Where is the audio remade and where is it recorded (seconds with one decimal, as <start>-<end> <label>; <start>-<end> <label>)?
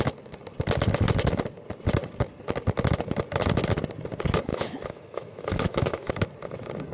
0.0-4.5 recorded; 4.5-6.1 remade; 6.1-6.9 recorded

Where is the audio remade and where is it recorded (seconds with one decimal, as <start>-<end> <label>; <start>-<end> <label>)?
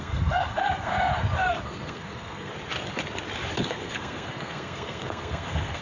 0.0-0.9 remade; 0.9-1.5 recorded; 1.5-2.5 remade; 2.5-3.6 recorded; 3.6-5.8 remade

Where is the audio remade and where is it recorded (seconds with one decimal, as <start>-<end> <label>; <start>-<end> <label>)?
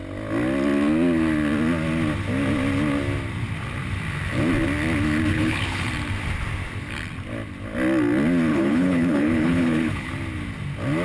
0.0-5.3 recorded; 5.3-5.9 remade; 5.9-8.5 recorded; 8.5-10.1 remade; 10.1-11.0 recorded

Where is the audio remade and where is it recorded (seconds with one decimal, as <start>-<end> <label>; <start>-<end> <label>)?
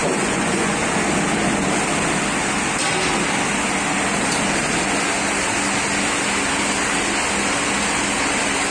0.0-0.8 remade; 0.8-8.7 recorded